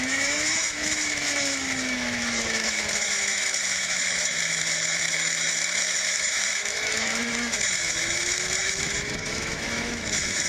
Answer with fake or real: fake